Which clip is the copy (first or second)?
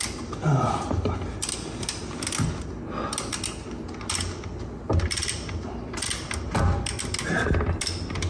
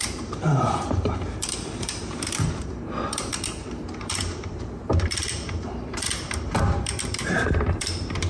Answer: second